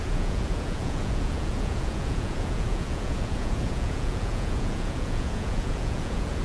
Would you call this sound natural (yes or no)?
no